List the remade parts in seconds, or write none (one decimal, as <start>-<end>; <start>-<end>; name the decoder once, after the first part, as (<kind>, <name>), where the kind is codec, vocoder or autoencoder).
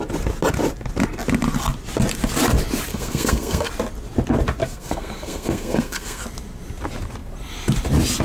2.9-3.7 (codec, SNAC); 4.6-6.2